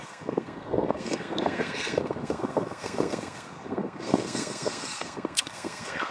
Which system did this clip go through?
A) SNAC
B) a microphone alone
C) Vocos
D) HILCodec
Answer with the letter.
A